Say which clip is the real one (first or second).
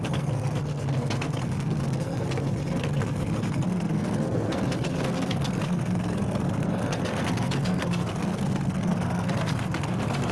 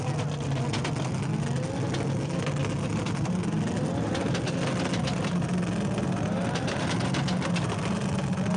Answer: second